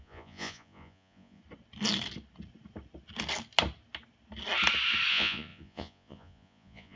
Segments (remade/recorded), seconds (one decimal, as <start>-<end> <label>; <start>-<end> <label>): 0.0-1.4 remade; 1.4-5.1 recorded; 5.1-7.0 remade